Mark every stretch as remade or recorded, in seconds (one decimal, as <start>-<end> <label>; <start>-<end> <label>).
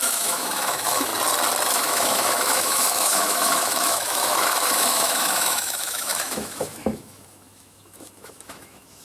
0.0-1.1 remade; 1.1-1.7 recorded; 1.7-9.0 remade